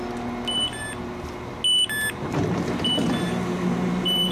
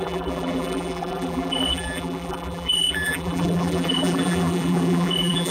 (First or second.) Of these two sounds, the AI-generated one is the second